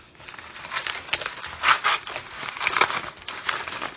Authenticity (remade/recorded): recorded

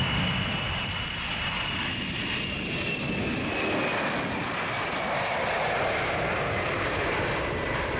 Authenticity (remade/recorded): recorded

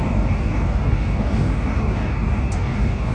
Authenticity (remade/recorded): remade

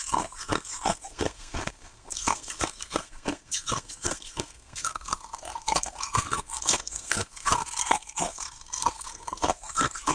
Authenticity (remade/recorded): remade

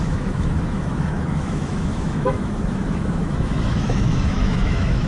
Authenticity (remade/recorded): remade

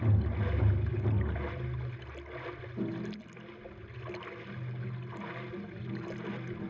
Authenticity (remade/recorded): recorded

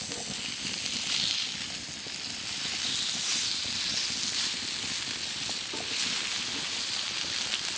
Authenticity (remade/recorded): recorded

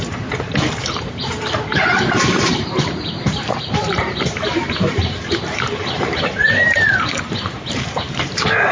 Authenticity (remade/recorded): remade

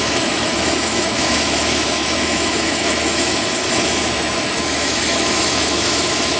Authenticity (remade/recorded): remade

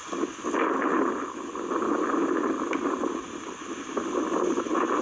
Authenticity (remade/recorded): recorded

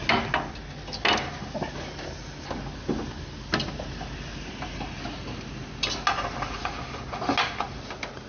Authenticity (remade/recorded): recorded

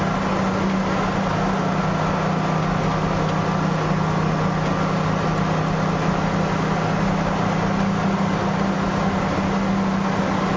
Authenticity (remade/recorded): recorded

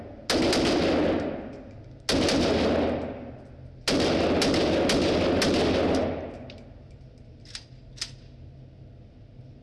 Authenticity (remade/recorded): recorded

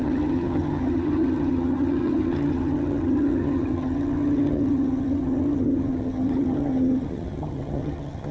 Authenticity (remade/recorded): remade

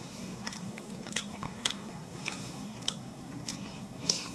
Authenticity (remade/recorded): remade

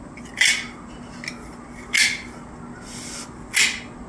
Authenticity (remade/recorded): recorded